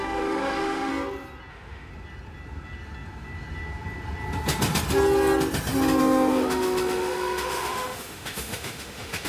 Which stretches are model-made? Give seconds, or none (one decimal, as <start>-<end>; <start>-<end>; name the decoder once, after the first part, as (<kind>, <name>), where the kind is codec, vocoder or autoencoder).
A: 0.0-0.9 (autoencoder, DAC-VAE); 1.5-1.9; 6.0-9.3